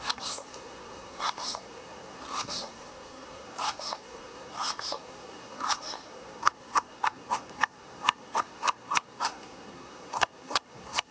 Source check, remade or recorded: remade